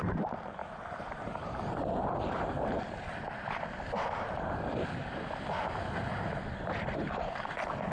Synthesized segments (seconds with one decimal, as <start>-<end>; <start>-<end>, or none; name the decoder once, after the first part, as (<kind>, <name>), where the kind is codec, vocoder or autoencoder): 0.6-2.8 (vocoder, BigVGAN v2)